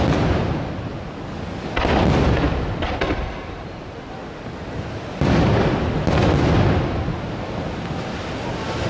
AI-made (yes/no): no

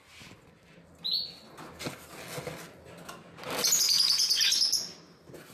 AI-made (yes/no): no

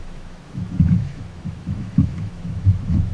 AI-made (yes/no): yes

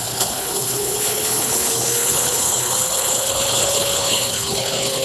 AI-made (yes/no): yes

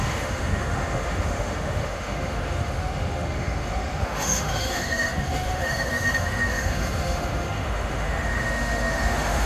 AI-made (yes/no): yes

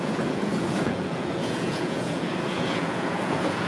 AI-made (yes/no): yes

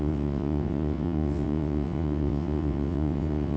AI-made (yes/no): yes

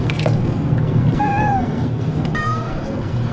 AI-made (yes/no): yes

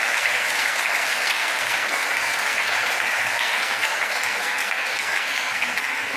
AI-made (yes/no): yes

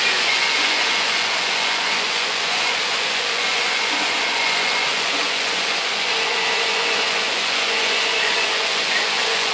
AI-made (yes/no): yes